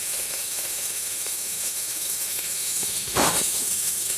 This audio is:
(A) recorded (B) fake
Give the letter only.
B